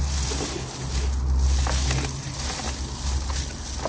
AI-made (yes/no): no